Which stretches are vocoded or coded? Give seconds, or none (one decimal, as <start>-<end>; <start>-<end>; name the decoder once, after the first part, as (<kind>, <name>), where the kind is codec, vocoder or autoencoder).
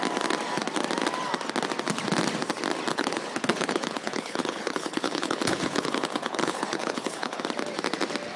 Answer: 2.9-7.4 (codec, HILCodec)